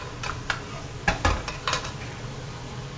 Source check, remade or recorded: recorded